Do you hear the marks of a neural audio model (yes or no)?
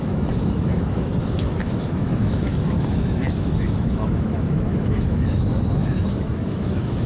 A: yes